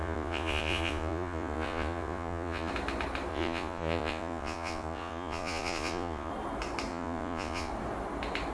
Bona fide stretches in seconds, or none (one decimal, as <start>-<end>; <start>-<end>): 2.7-3.3; 6.3-6.9; 7.7-8.5